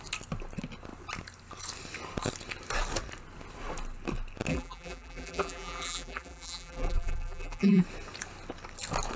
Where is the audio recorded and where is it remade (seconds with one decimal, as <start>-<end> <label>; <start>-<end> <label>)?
0.0-4.5 recorded; 4.5-7.8 remade; 7.8-9.2 recorded